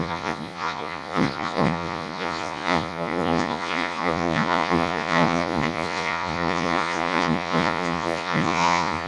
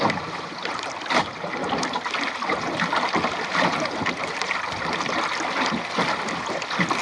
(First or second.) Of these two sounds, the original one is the second